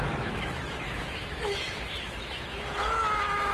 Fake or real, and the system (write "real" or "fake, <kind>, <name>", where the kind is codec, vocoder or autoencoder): fake, autoencoder, DAC-VAE